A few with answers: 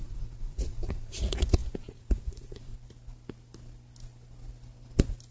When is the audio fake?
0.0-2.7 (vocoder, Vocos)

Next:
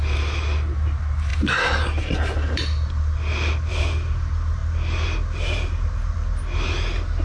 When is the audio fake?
none